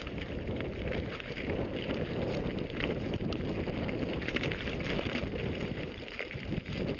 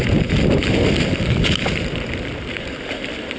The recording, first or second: second